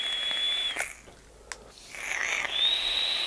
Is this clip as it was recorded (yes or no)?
yes